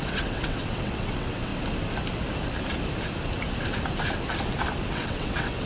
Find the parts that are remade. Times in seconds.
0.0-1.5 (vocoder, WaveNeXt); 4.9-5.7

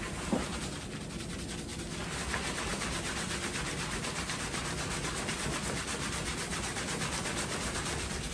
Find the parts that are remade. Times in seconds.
2.7-3.5 (vocoder, BigVGAN v2); 6.5-7.8

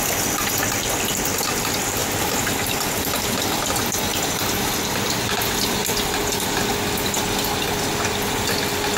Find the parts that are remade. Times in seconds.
2.0-3.5 (vocoder, BigVGAN v2); 4.1-5.2

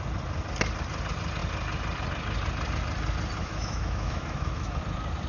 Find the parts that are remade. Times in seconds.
3.4-4.8 (autoencoder, DAC-VAE)

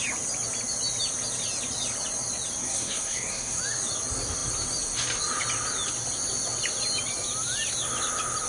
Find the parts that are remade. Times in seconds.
2.6-3.6 (codec, SNAC)

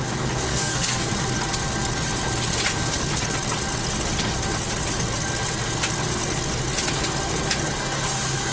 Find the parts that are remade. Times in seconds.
0.5-1.1 (codec, SNAC)